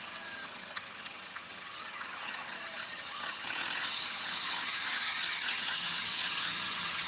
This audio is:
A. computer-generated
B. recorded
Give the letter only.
A